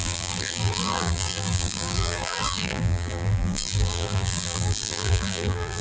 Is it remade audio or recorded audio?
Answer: remade